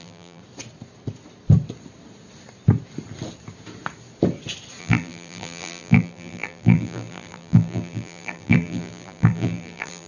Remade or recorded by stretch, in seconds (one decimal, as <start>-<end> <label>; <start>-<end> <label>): 0.0-0.4 remade; 0.4-4.8 recorded; 4.8-10.1 remade